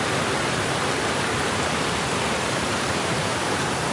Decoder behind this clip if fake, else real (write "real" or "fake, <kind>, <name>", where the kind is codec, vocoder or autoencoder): fake, vocoder, BigVGAN v2